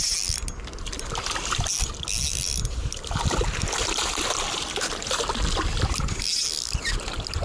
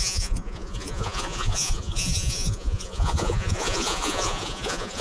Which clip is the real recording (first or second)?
first